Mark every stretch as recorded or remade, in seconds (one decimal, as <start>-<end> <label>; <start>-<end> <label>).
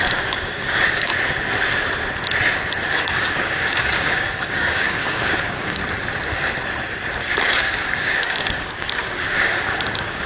0.0-1.1 remade; 1.1-2.9 recorded; 2.9-5.8 remade; 5.8-7.2 recorded; 7.2-10.3 remade